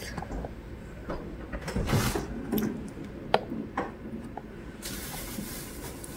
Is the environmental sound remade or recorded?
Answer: recorded